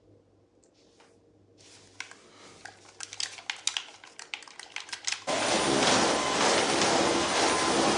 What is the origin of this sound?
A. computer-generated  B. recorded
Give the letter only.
B